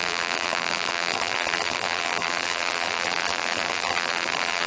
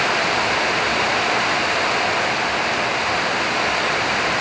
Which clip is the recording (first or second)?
second